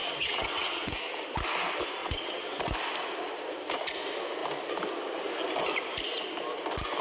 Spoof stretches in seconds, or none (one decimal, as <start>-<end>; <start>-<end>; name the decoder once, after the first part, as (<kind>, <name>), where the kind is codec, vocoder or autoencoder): 0.0-0.9 (vocoder, WaveNeXt); 2.0-2.6